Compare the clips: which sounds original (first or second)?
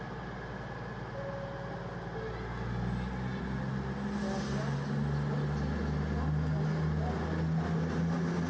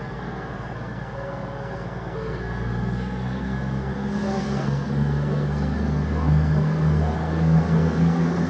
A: first